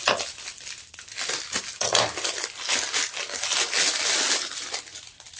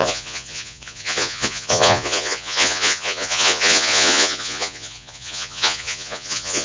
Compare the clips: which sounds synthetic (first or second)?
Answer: second